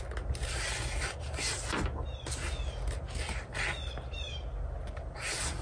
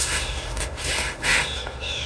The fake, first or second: second